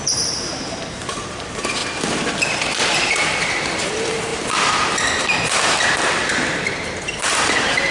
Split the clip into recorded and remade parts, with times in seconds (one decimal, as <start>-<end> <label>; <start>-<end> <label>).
0.0-1.8 remade; 1.8-2.8 recorded; 2.8-7.9 remade